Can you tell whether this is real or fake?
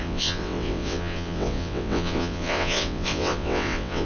fake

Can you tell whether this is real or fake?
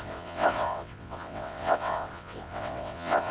fake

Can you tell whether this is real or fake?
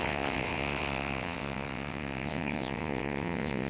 fake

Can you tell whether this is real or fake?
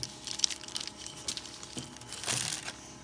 real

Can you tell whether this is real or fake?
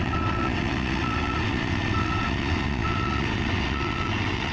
fake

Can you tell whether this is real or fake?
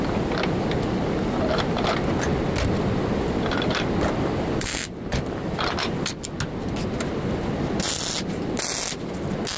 real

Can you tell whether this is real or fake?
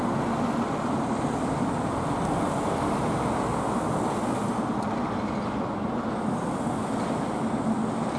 real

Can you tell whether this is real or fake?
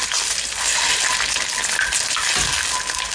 real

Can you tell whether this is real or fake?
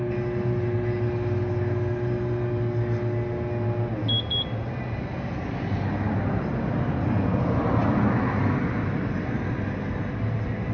real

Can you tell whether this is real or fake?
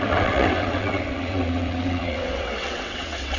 fake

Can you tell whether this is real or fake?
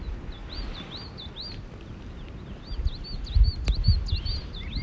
real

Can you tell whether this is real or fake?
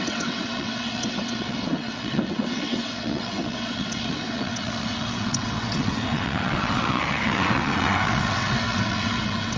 fake